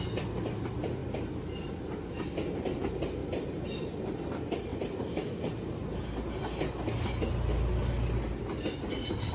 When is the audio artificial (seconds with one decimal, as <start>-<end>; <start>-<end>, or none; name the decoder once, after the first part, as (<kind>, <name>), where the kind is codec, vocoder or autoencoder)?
4.7-5.5 (vocoder, BigVGAN v2)